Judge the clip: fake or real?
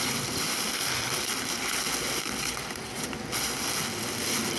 real